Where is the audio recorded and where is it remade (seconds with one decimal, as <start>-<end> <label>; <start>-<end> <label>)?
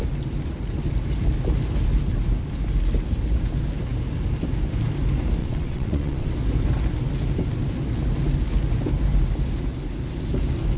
0.0-5.4 recorded; 5.4-6.3 remade; 6.3-10.8 recorded